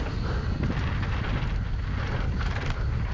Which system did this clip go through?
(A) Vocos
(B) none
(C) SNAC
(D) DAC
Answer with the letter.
B